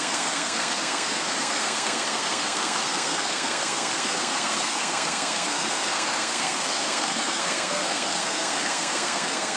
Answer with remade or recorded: remade